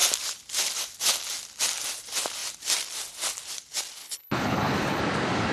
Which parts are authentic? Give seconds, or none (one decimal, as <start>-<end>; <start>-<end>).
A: 0.0-4.0; 5.0-5.5